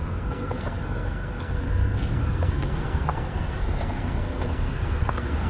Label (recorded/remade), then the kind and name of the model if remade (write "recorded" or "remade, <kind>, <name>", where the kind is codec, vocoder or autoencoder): remade, codec, SNAC